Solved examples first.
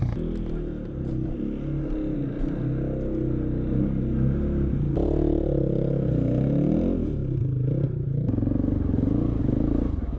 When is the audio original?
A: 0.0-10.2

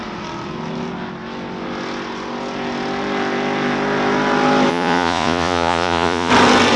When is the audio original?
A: 0.0-4.7; 6.3-6.8

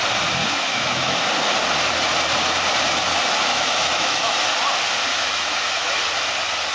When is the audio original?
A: 0.0-0.4; 1.3-3.5; 4.3-5.1; 6.0-6.7

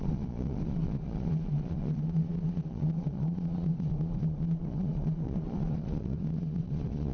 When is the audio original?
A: none

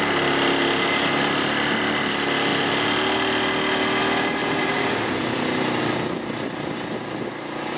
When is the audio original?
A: 0.0-4.4; 5.8-7.8